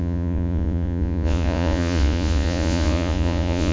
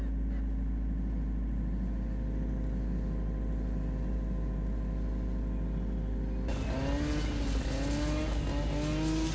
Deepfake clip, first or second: first